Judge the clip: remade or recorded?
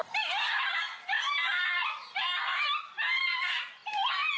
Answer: recorded